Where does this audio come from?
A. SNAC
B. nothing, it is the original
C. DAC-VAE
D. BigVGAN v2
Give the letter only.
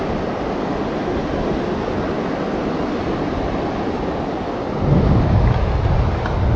B